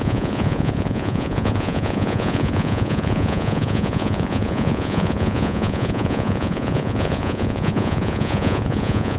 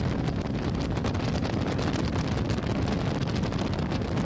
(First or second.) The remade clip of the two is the first